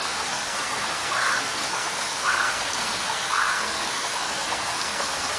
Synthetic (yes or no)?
yes